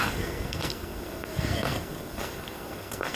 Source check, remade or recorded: remade